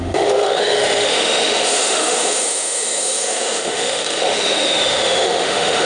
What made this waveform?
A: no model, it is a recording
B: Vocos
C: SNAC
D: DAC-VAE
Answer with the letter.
D